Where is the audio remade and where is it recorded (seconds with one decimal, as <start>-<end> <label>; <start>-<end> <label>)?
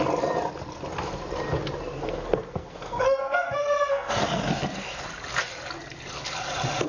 0.0-1.9 recorded; 1.9-5.0 remade; 5.0-6.9 recorded